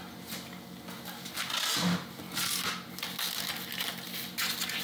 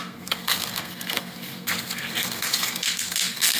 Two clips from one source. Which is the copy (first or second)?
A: second